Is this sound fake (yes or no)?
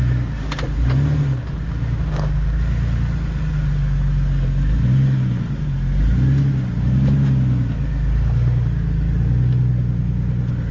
no